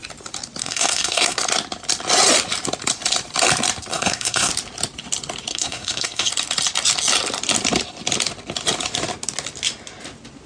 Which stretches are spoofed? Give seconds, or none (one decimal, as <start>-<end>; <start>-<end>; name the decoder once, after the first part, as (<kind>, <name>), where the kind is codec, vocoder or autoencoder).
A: 0.6-1.4 (codec, SNAC); 3.9-4.5; 5.5-6.3